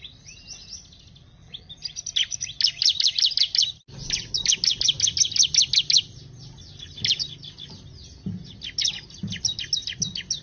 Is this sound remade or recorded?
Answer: recorded